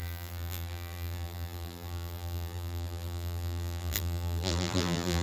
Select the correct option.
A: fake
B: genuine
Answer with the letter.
A